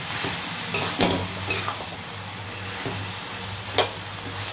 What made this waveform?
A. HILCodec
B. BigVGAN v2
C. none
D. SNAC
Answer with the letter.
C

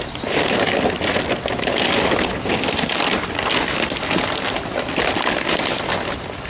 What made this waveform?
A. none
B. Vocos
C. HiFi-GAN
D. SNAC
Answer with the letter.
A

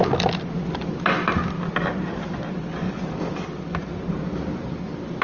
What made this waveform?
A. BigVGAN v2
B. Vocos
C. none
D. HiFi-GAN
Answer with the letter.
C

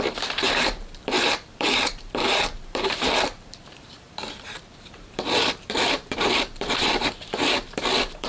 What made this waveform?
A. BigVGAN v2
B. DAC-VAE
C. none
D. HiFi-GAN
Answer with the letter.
A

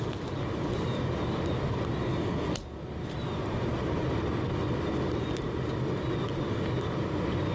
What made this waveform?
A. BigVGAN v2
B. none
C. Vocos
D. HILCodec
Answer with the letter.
B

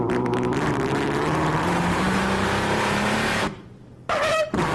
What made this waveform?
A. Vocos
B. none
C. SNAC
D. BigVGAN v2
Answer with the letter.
D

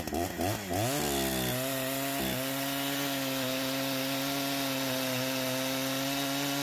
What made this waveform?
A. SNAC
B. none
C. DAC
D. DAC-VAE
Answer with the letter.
B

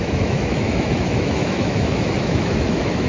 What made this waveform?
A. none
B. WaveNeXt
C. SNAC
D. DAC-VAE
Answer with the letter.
D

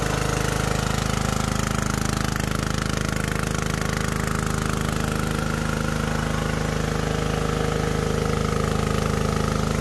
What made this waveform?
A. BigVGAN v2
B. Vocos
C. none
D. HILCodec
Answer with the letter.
C